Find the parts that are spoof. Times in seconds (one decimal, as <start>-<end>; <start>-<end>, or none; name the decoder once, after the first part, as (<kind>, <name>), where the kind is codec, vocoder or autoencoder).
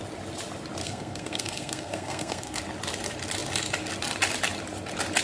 0.8-2.6 (codec, SNAC)